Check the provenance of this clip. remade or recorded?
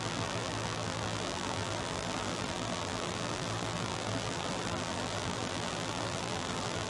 remade